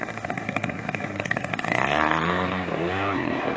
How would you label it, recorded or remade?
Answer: remade